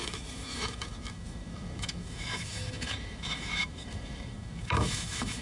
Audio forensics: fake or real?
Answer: fake